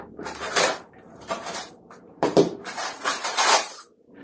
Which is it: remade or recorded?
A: remade